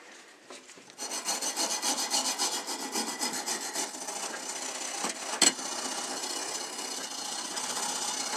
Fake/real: real